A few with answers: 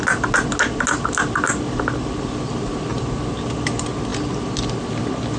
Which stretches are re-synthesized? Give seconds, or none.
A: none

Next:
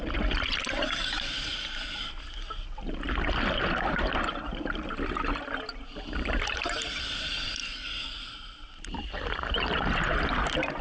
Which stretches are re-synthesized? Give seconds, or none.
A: none

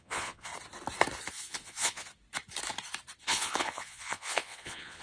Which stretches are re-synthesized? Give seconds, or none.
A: 0.0-0.5; 1.3-2.1; 3.2-5.0

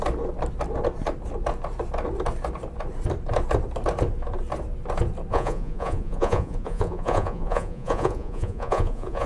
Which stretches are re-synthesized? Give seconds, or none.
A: 5.3-9.3

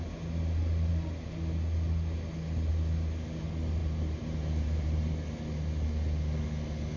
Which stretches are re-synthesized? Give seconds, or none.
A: 3.8-5.1